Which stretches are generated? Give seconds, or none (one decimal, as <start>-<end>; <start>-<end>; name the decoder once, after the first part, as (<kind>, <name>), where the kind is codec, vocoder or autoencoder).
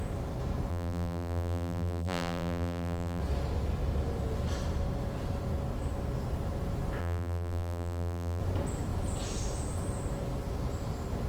0.7-3.2 (vocoder, BigVGAN v2); 7.0-8.4